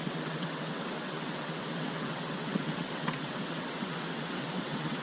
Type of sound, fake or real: fake